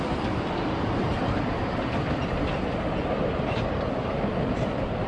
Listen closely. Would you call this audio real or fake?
fake